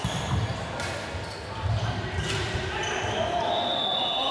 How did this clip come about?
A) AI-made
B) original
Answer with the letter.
B